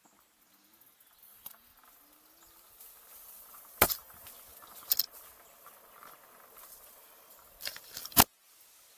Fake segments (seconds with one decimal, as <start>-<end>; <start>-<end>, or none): 3.1-3.6